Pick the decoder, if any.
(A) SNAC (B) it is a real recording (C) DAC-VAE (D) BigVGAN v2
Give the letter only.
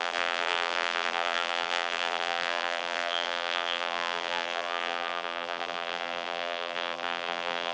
D